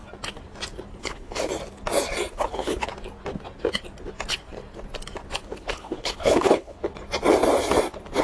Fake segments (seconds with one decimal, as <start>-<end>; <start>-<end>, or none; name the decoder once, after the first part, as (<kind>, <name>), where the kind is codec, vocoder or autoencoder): 1.0-1.5 (codec, HILCodec); 2.3-2.9; 5.4-6.8